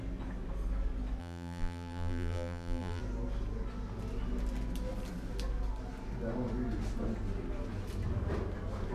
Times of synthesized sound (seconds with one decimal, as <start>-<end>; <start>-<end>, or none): 1.2-3.0